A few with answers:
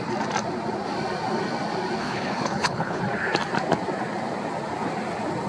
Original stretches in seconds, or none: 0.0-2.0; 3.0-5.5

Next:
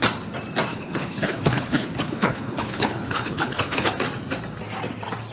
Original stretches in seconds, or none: 0.0-0.7; 3.9-5.3